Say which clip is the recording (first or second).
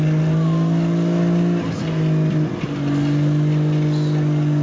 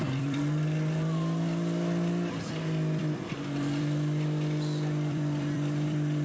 first